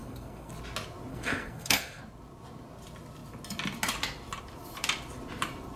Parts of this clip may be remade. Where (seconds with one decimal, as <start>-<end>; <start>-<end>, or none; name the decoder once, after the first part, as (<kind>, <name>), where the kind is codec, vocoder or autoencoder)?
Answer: 0.0-0.5 (codec, SNAC); 1.1-2.0